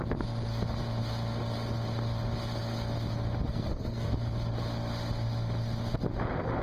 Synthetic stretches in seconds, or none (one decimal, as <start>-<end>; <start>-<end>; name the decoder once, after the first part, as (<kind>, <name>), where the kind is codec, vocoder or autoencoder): 3.5-4.1 (codec, SNAC)